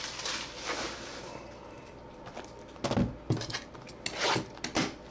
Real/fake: real